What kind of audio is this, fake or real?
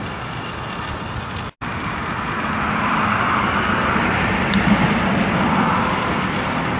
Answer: real